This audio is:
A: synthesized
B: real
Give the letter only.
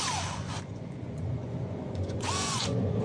A